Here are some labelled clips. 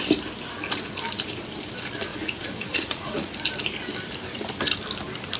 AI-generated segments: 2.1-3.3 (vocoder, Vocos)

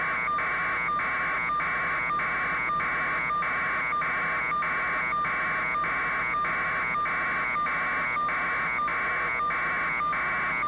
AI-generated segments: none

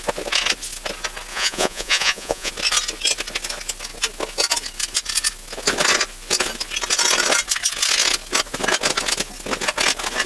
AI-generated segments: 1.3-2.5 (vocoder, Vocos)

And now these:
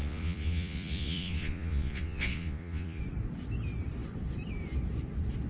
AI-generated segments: 0.0-3.0 (vocoder, Vocos)

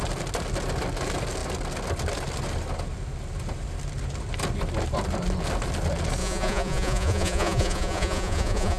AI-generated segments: 6.2-8.8 (vocoder, Vocos)